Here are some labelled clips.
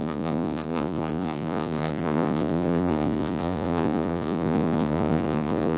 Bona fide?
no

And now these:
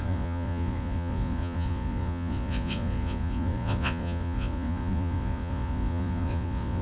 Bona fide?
no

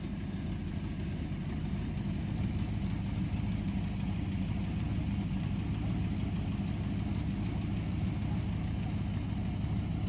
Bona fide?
yes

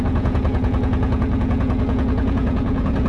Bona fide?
no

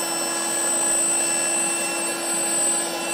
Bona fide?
yes